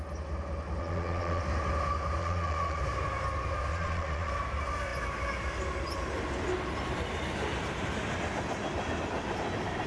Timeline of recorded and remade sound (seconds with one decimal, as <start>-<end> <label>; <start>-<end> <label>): 0.0-0.8 recorded; 0.8-1.4 remade; 1.4-2.2 recorded; 2.2-2.8 remade; 2.8-3.7 recorded; 3.7-4.3 remade; 4.3-9.9 recorded